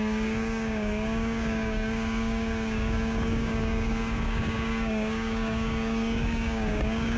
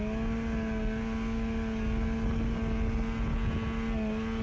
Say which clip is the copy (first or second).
first